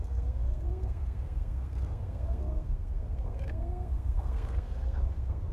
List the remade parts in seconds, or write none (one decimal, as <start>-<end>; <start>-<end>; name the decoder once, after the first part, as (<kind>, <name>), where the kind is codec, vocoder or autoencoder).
0.0-5.5 (codec, SNAC)